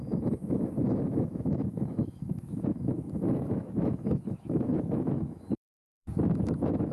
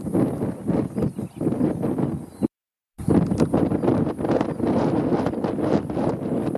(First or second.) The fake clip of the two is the first